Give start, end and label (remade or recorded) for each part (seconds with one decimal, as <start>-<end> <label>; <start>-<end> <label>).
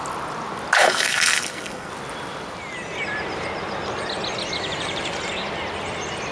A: 0.0-0.8 recorded; 0.8-1.9 remade; 1.9-6.3 recorded